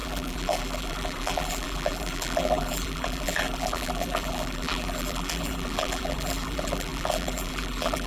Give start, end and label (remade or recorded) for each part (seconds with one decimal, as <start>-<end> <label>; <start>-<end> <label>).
0.0-8.1 remade